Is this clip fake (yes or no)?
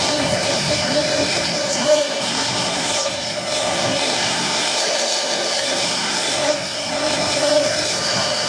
yes